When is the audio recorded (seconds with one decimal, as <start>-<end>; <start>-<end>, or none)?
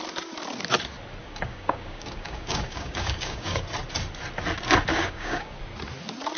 0.0-1.2; 3.6-4.9; 5.6-6.4